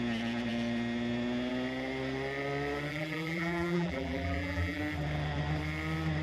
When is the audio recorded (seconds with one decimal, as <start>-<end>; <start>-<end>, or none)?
0.0-2.9; 4.8-6.2